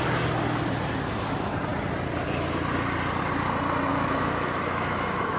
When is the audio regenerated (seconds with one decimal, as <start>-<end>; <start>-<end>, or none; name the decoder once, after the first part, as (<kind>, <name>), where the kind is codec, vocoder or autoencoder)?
3.9-5.4 (autoencoder, DAC-VAE)